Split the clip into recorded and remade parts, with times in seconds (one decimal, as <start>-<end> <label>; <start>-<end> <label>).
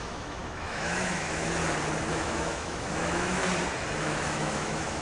0.0-1.6 remade; 1.6-2.1 recorded; 2.1-3.4 remade; 3.4-4.0 recorded; 4.0-5.0 remade